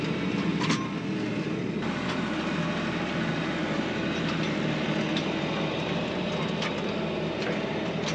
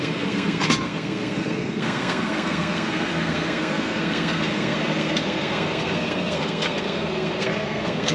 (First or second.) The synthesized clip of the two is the second